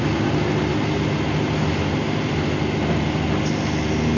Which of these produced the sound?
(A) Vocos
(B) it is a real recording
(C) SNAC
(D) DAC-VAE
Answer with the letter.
B